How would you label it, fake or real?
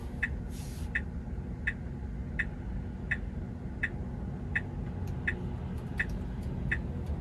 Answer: real